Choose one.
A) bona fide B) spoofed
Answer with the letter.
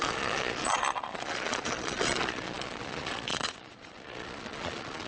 B